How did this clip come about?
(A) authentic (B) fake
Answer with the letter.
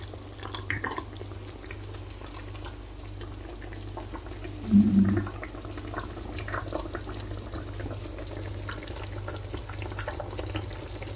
A